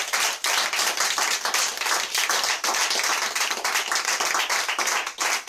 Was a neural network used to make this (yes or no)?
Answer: yes